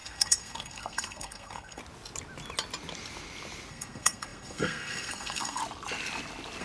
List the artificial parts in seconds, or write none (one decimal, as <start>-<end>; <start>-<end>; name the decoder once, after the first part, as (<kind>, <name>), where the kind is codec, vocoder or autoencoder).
0.0-1.8 (codec, SNAC); 3.7-5.6